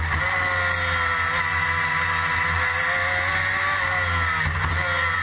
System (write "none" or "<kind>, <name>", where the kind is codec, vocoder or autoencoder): none